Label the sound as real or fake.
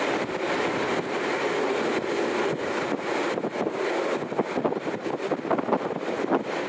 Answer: real